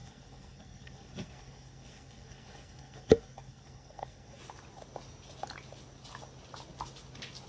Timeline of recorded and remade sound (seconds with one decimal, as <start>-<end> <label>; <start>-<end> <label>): 0.0-4.4 remade; 4.4-7.5 recorded